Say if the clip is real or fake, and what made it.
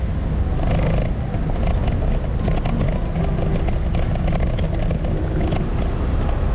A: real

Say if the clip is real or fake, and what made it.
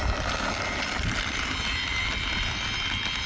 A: real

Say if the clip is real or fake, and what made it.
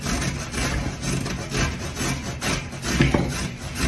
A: real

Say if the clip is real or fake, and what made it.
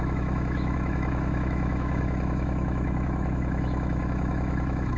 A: fake, autoencoder, DAC-VAE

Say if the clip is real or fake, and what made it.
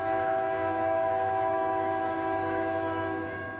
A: fake, autoencoder, DAC-VAE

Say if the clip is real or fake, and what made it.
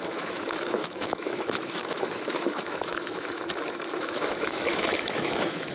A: fake, autoencoder, DAC-VAE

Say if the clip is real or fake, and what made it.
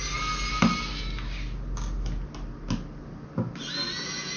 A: real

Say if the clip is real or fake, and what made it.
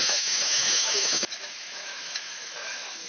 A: fake, autoencoder, DAC-VAE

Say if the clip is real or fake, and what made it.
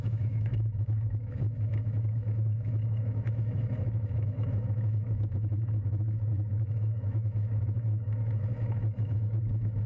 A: fake, autoencoder, DAC-VAE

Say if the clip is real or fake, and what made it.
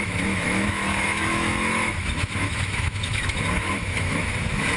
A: fake, autoencoder, DAC-VAE